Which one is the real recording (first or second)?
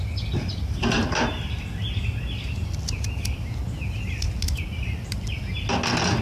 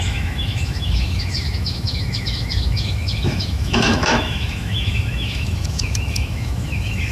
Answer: first